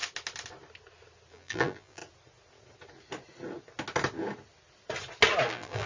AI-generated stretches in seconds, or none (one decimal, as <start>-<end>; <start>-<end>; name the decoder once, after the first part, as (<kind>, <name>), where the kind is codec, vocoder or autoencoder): 1.3-2.0 (vocoder, BigVGAN v2); 5.5-5.9